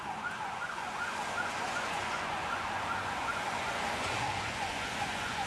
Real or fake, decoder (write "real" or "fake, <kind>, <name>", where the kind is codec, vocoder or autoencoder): fake, vocoder, Vocos